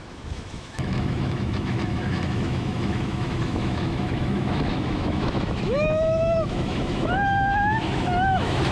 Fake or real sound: fake